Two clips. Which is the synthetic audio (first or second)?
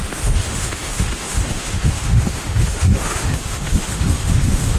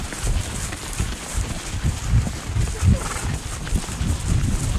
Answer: first